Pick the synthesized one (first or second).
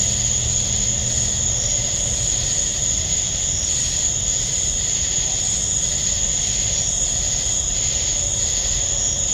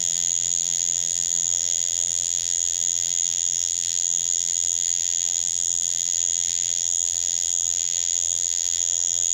second